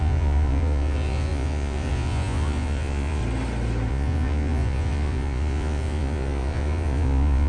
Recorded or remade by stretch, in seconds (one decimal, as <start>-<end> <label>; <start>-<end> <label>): 0.0-3.2 remade; 3.2-3.9 recorded; 3.9-7.5 remade